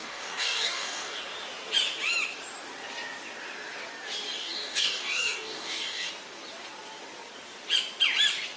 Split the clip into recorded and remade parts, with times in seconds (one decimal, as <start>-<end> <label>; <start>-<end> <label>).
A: 0.0-1.2 remade; 1.2-4.4 recorded; 4.4-6.1 remade; 6.1-8.6 recorded